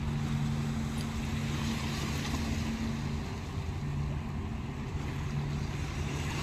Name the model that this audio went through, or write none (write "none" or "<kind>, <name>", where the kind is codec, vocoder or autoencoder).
none